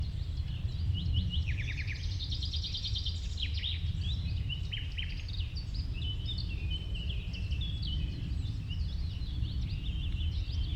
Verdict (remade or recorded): recorded